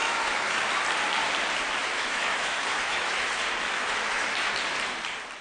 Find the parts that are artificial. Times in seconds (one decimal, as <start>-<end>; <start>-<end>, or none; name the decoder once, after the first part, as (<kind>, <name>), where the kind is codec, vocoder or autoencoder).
0.0-0.7 (autoencoder, DAC-VAE); 1.8-3.3; 3.8-4.5